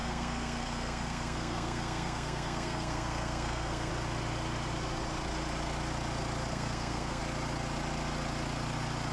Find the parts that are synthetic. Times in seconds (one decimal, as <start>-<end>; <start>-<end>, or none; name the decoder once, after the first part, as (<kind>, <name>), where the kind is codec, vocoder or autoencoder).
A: 0.0-3.9 (codec, SNAC); 6.5-7.2